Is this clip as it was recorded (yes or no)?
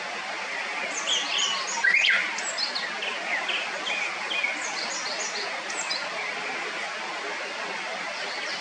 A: yes